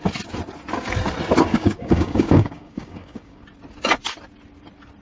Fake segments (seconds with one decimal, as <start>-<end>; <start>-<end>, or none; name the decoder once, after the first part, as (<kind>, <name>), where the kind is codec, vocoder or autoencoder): 1.5-3.4 (codec, DAC)